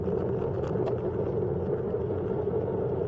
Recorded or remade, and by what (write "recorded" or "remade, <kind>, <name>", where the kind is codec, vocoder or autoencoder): recorded